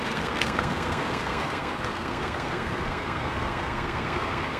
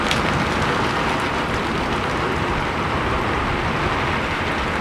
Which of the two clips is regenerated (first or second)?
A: first